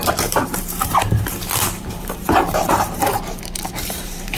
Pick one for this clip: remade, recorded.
remade